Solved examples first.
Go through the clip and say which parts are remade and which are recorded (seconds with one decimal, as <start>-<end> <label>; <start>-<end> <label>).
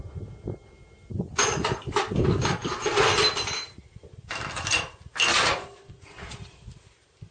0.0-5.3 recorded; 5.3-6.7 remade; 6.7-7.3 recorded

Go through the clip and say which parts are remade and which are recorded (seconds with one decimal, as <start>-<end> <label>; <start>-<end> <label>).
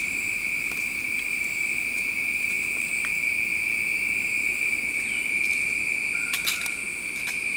0.0-2.9 remade; 2.9-7.6 recorded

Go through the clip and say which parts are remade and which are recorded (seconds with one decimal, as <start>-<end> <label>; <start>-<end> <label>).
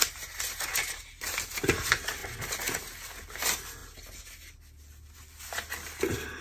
0.0-0.7 recorded; 0.7-1.4 remade; 1.4-6.4 recorded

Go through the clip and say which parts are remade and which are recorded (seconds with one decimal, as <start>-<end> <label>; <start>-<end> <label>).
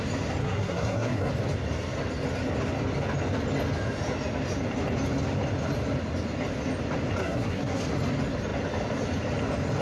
0.0-0.4 recorded; 0.4-1.3 remade; 1.3-7.2 recorded; 7.2-7.8 remade; 7.8-9.8 recorded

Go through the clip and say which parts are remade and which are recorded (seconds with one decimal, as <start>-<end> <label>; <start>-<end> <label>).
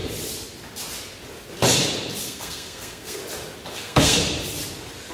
0.0-2.2 recorded; 2.2-3.2 remade; 3.2-3.7 recorded; 3.7-4.2 remade; 4.2-5.1 recorded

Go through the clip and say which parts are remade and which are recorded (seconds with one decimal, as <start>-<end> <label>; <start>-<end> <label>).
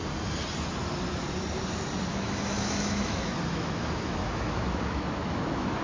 0.0-2.1 recorded; 2.1-5.8 remade